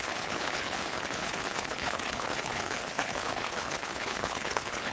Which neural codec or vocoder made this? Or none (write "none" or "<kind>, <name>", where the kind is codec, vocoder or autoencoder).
codec, HILCodec